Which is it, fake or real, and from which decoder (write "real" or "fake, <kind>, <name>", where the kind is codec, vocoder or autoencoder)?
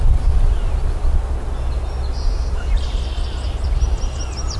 real